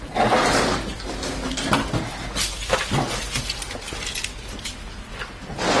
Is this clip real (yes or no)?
yes